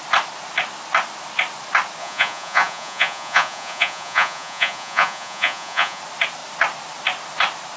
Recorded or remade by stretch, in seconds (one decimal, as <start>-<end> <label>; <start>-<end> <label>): 0.0-2.0 recorded; 2.0-6.0 remade; 6.0-7.8 recorded